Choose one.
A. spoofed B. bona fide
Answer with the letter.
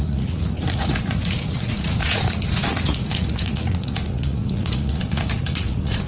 A